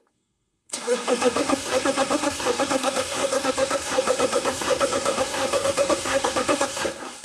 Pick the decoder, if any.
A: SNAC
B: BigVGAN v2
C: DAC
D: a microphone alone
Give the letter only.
A